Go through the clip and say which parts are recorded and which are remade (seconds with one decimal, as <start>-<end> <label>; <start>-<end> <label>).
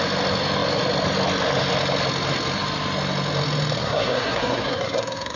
0.0-3.8 recorded; 3.8-5.4 remade